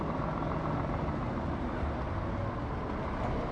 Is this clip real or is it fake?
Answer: real